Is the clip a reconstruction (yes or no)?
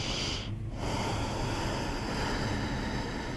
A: no